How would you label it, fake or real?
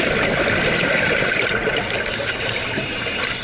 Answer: real